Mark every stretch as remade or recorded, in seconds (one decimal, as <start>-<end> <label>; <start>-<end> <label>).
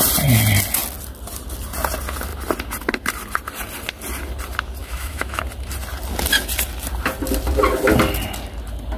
0.0-4.8 recorded; 4.8-5.4 remade; 5.4-9.0 recorded